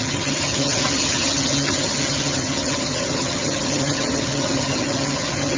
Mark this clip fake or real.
fake